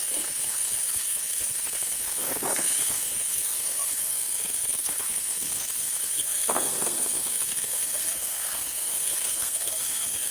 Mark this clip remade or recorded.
remade